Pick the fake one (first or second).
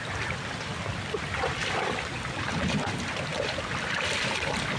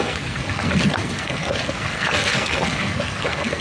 second